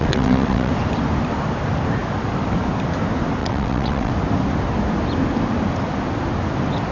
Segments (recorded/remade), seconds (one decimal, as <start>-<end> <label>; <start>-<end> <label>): 0.0-0.7 remade; 0.7-3.4 recorded; 3.4-4.1 remade; 4.1-6.9 recorded

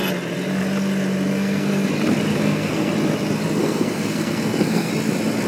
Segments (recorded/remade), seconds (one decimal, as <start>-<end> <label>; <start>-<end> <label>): 0.0-1.3 recorded; 1.3-1.9 remade; 1.9-2.3 recorded; 2.3-2.9 remade; 2.9-3.6 recorded; 3.6-4.9 remade; 4.9-5.5 recorded

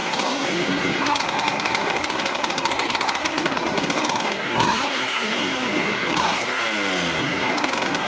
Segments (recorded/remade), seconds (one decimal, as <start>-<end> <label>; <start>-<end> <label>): 0.0-6.6 remade; 6.6-7.2 recorded; 7.2-8.1 remade

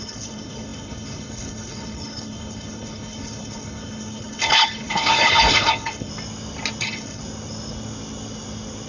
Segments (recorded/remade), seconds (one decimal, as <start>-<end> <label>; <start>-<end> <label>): 0.0-6.1 remade; 6.1-6.8 recorded; 6.8-7.2 remade; 7.2-8.9 recorded